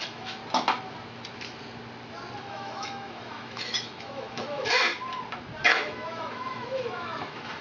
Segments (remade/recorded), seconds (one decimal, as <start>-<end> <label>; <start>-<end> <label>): 0.0-0.4 remade; 0.4-2.4 recorded; 2.4-4.9 remade; 4.9-5.6 recorded; 5.6-7.6 remade